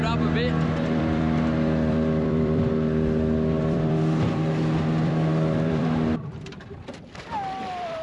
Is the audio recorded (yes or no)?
no